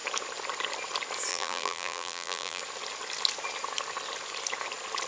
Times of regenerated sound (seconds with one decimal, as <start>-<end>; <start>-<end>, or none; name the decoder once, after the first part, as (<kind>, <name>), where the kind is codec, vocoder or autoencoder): 1.3-2.6 (vocoder, BigVGAN v2)

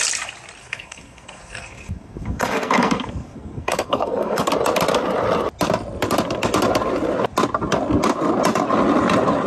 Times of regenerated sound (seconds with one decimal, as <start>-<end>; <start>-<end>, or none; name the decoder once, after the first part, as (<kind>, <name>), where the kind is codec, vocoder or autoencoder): 0.6-4.5 (codec, SNAC)

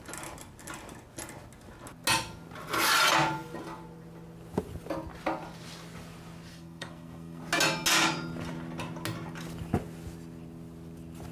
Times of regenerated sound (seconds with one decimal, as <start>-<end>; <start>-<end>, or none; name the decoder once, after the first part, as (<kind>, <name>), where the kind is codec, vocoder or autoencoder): 6.5-7.4 (codec, SNAC)

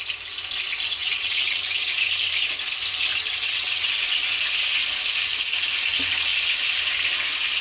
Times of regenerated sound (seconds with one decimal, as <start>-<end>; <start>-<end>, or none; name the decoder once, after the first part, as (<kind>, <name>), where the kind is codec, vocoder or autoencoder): 1.0-1.6 (vocoder, WaveNeXt); 3.1-4.3